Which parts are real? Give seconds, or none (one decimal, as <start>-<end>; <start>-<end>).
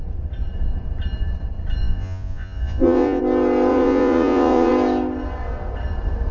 0.0-1.8; 3.2-3.7; 4.7-6.3